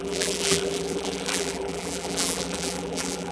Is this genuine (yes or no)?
no